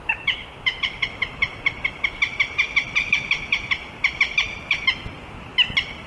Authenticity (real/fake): real